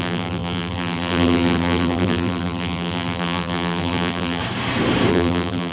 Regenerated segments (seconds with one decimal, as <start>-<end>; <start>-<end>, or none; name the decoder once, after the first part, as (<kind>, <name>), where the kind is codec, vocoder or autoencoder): 0.0-4.4 (vocoder, BigVGAN v2); 5.1-5.7